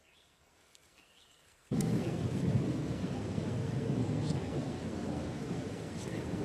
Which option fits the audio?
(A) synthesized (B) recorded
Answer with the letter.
A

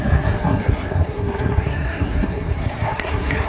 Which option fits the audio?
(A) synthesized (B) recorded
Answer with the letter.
A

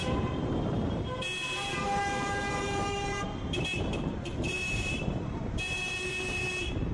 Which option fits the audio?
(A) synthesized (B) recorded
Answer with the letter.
A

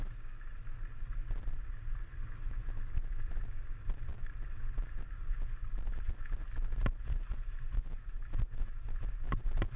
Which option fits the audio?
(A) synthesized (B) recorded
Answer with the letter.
B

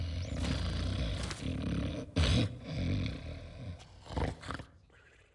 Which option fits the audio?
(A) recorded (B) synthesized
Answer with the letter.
A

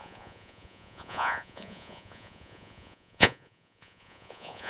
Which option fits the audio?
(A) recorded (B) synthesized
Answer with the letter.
B